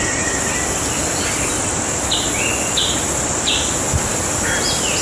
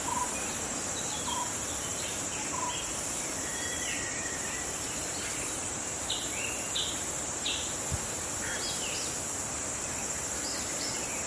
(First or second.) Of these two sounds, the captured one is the first